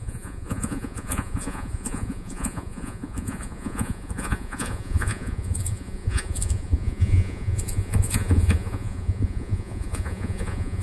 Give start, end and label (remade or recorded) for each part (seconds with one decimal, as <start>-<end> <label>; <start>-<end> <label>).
0.0-10.8 remade